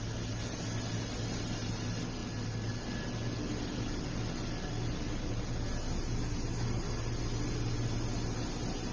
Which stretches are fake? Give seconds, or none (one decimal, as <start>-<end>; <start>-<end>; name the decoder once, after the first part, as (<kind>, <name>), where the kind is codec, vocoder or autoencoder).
none